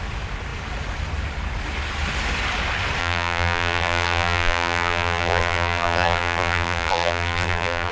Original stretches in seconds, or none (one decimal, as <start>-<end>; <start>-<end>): 0.0-3.0